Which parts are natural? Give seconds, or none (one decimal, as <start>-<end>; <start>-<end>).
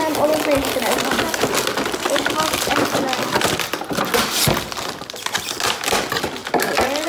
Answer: 0.0-7.1